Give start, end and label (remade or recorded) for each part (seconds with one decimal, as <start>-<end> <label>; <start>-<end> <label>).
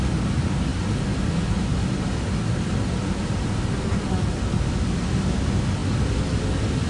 0.0-6.9 recorded